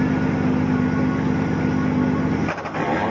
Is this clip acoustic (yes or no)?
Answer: yes